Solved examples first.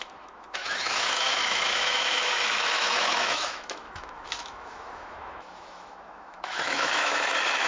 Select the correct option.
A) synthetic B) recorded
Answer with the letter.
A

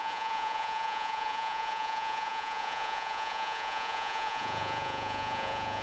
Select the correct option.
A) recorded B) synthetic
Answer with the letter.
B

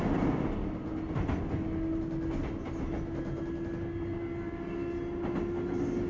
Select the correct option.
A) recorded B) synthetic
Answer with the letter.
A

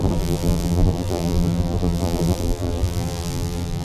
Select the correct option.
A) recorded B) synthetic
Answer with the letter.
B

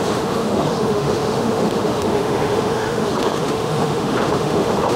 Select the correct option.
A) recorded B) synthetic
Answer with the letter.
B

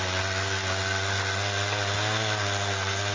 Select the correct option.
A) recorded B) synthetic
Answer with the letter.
A